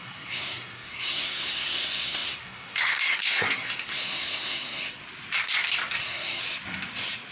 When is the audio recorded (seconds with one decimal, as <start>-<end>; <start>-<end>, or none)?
5.0-5.9; 6.4-7.3